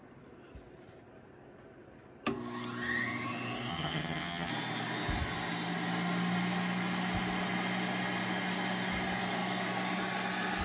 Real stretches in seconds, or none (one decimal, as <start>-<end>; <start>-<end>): 0.0-3.7; 4.5-10.6